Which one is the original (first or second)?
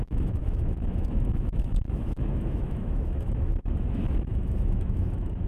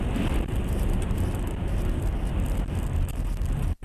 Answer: second